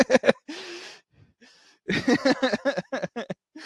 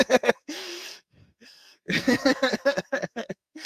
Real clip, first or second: first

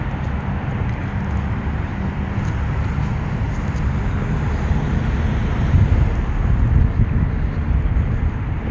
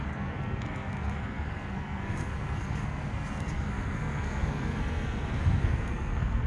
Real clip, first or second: first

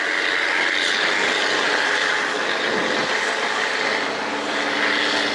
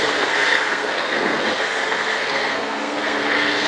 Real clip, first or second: first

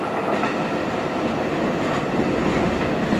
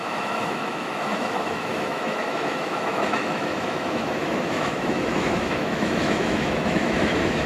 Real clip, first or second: first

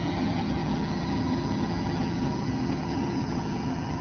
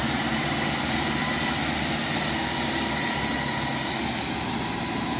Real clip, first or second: second